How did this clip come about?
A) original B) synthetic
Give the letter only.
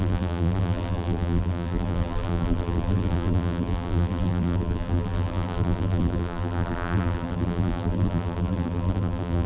B